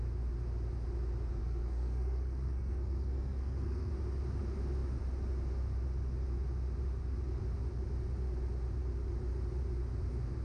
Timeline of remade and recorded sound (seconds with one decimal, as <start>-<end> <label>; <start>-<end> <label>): 0.0-1.4 recorded; 1.4-3.9 remade; 3.9-10.4 recorded